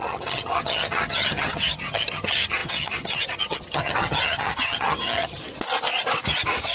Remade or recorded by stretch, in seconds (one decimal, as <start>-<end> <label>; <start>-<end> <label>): 0.0-5.4 remade; 5.4-6.7 recorded